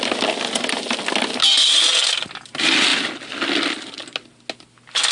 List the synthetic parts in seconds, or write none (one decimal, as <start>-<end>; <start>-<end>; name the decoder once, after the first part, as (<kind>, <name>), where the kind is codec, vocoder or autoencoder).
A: none